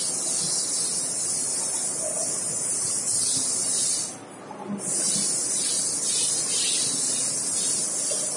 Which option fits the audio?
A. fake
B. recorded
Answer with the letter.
B